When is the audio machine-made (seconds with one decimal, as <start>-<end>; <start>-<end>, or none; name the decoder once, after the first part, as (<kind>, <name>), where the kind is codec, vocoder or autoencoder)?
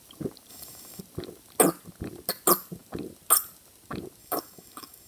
0.5-1.0 (codec, DAC); 4.2-5.1